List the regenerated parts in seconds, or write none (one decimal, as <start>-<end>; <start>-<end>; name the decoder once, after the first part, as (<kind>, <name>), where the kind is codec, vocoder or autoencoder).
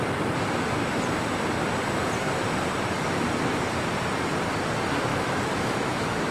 5.1-6.3 (autoencoder, DAC-VAE)